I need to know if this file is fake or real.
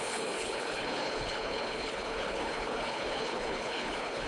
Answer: fake